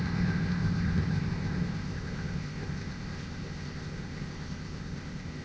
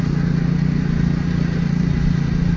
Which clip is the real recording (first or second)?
second